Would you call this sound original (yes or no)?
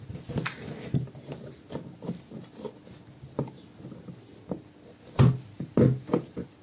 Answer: yes